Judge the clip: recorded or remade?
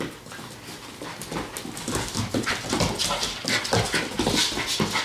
recorded